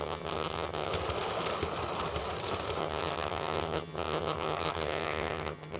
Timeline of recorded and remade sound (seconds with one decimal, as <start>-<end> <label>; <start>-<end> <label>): 0.0-0.9 remade; 0.9-2.8 recorded; 2.8-5.8 remade